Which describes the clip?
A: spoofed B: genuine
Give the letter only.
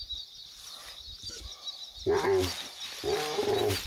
B